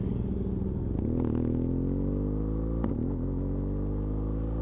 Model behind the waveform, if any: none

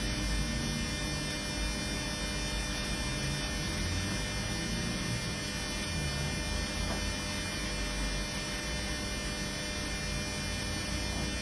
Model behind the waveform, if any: none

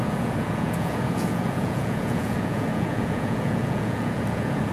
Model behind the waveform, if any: vocoder, Vocos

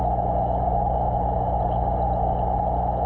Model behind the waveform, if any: none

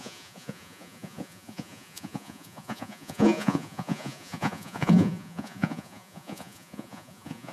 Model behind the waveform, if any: vocoder, Vocos